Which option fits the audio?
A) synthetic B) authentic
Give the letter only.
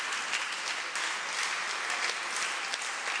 B